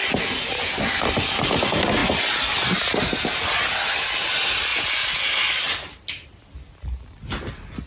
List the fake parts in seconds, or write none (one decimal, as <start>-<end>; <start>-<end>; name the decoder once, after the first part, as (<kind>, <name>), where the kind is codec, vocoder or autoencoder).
none